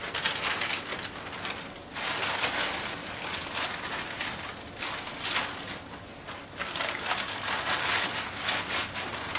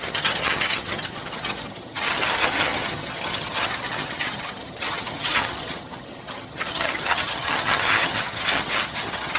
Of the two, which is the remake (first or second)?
second